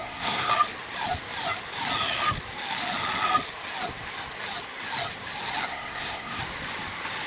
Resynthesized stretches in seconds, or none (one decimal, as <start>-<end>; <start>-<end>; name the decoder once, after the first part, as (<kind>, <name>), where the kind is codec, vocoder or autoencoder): 0.0-0.5 (codec, SNAC); 5.7-6.4